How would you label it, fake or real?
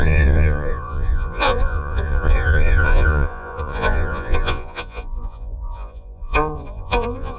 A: fake